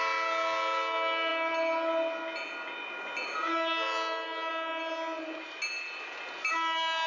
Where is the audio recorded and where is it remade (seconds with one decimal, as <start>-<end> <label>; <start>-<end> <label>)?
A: 0.0-7.1 recorded